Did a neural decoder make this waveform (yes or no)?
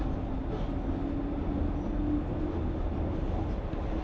no